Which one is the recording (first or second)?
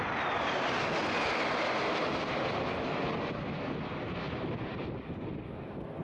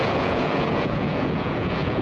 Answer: first